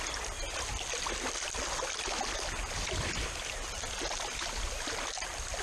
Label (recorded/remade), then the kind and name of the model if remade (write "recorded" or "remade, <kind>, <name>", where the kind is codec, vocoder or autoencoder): recorded